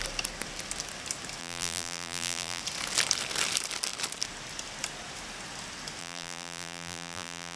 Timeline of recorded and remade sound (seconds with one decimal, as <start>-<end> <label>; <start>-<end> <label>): 0.0-1.4 recorded; 1.4-2.6 remade; 2.6-6.0 recorded; 6.0-7.6 remade

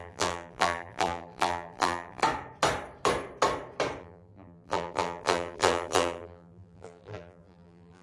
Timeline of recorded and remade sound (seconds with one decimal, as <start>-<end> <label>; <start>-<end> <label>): 0.0-2.2 remade; 2.2-4.0 recorded; 4.0-8.0 remade